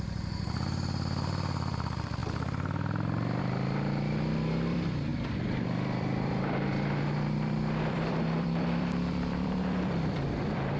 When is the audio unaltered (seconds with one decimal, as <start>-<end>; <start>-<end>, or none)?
2.2-3.4